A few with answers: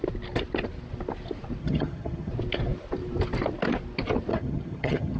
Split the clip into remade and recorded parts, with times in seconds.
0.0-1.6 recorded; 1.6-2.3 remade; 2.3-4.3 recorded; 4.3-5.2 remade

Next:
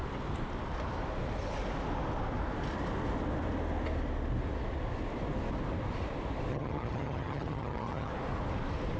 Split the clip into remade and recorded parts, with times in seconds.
0.0-6.5 recorded; 6.5-8.1 remade; 8.1-9.0 recorded